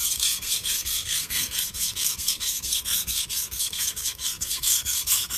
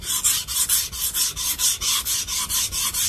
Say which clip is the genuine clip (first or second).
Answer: second